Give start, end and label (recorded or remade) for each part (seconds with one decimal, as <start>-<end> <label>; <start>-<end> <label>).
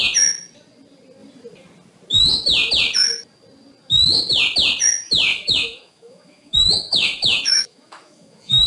0.0-5.3 recorded; 5.3-8.7 remade